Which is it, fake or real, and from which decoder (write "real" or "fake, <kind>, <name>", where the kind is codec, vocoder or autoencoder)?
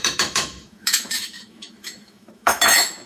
fake, autoencoder, DAC-VAE